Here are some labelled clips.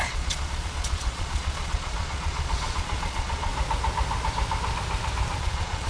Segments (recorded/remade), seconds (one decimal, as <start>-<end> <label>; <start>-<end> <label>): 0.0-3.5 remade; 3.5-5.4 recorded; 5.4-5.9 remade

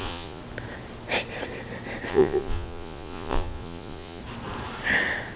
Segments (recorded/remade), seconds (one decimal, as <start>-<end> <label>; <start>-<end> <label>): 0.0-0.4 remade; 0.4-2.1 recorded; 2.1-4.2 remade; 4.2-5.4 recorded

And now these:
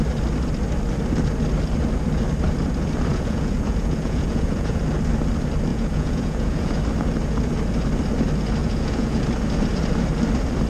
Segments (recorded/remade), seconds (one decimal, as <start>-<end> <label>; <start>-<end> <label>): 0.0-3.1 recorded; 3.1-4.8 remade; 4.8-5.7 recorded; 5.7-6.8 remade; 6.8-8.6 recorded; 8.6-9.2 remade; 9.2-10.7 recorded